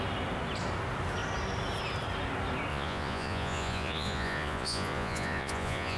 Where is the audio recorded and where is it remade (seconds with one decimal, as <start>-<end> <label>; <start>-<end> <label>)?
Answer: 0.0-2.7 recorded; 2.7-6.0 remade